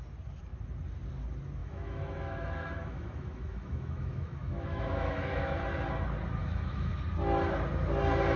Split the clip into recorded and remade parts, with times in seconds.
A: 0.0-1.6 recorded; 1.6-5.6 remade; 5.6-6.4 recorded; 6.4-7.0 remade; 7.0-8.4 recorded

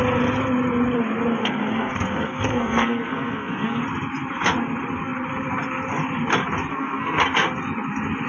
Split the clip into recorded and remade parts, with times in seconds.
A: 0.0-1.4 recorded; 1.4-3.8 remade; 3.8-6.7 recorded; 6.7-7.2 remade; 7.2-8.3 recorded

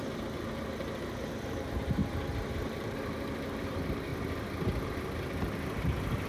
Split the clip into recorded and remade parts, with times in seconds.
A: 0.0-2.0 remade; 2.0-2.5 recorded; 2.5-4.1 remade; 4.1-5.8 recorded; 5.8-6.3 remade

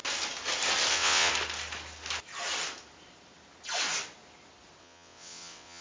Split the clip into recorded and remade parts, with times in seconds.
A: 0.0-0.9 recorded; 0.9-1.3 remade; 1.3-4.8 recorded; 4.8-5.8 remade

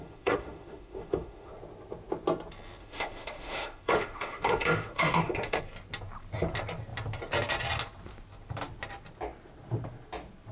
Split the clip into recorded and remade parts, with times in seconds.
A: 0.0-1.5 remade; 1.5-2.8 recorded; 2.8-5.6 remade; 5.6-10.5 recorded